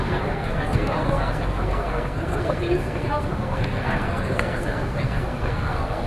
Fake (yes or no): yes